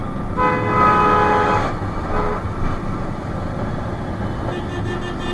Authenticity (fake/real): real